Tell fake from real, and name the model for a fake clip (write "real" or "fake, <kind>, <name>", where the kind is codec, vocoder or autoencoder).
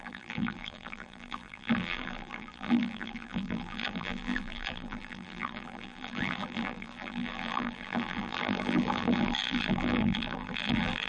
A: fake, vocoder, BigVGAN v2